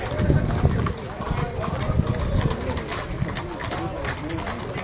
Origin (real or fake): real